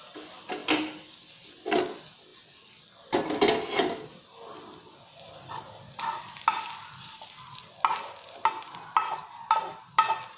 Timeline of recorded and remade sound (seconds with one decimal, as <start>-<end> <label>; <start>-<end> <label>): 0.0-10.4 recorded